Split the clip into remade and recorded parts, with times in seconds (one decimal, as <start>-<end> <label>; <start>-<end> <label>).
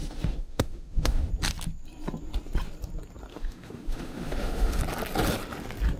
0.0-1.3 remade; 1.3-3.3 recorded; 3.3-4.8 remade; 4.8-6.0 recorded